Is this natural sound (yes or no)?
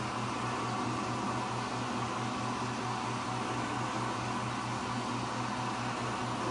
yes